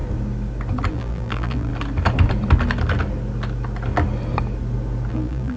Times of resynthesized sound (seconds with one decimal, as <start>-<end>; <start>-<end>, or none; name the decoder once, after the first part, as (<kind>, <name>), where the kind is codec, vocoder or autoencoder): 0.9-1.7 (vocoder, BigVGAN v2); 5.1-5.6